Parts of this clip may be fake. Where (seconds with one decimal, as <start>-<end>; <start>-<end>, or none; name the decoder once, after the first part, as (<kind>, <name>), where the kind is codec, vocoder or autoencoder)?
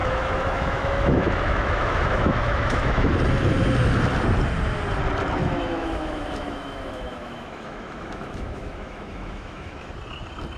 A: 0.0-3.1 (autoencoder, DAC-VAE); 5.4-9.9